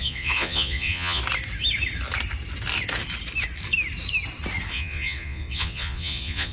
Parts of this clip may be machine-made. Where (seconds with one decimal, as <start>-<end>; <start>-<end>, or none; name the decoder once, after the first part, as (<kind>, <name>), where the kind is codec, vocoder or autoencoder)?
0.0-1.2 (vocoder, Vocos); 4.7-6.5